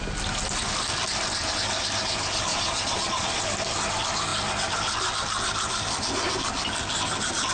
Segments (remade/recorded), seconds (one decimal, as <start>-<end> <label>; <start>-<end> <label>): 0.0-2.5 recorded; 2.5-3.4 remade; 3.4-7.5 recorded